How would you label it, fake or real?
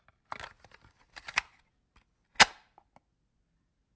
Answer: real